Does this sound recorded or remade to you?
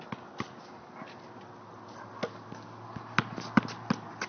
recorded